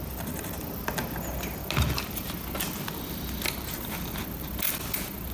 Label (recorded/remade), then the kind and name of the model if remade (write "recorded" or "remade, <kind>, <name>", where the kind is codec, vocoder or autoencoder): recorded